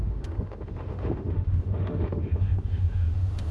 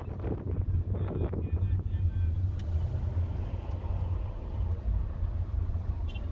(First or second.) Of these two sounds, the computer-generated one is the first